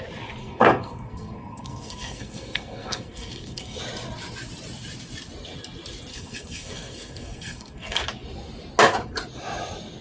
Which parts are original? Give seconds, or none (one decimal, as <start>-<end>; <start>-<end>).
0.0-0.4; 3.8-6.1; 8.0-10.0